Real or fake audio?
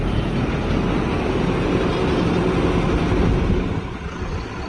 real